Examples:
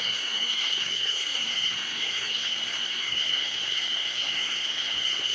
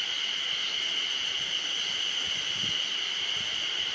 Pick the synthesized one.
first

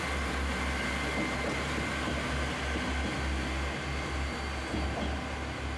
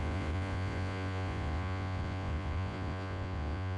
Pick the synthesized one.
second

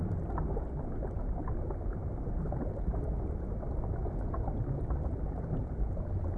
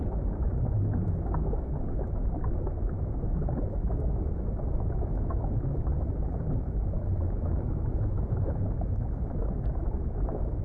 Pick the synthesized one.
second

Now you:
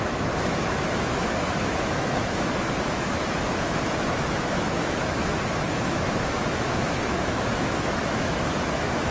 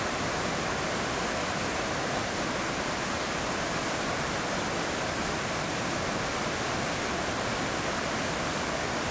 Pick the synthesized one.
first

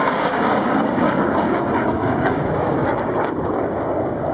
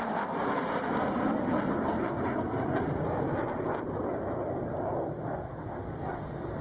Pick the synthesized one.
first